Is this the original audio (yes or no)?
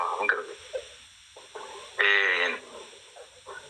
yes